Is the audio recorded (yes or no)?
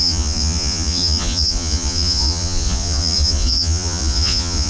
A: no